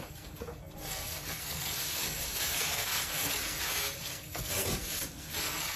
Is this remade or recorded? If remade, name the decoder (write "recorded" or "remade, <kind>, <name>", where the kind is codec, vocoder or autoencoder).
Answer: remade, codec, SNAC